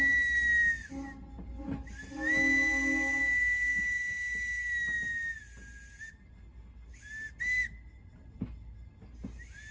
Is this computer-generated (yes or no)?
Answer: no